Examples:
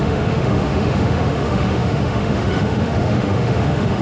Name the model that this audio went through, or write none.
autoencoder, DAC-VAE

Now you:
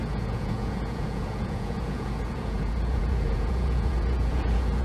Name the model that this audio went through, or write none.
vocoder, Vocos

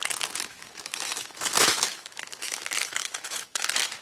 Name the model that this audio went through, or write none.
autoencoder, DAC-VAE